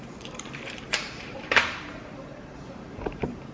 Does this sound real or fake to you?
fake